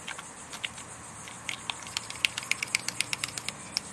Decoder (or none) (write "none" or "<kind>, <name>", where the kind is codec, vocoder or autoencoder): vocoder, BigVGAN v2